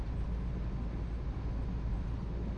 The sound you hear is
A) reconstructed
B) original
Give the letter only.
B